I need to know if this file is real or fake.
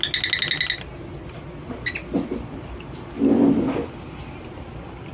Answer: real